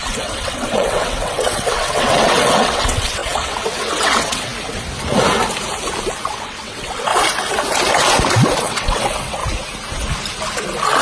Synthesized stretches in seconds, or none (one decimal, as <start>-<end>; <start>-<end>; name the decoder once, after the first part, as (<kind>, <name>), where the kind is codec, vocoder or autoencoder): 0.0-4.5 (vocoder, WaveNeXt); 6.3-7.1; 8.6-9.4